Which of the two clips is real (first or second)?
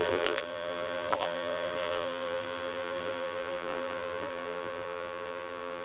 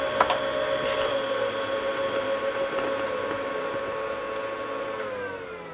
second